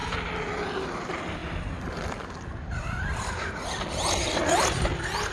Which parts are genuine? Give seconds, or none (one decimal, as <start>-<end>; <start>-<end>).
0.0-5.3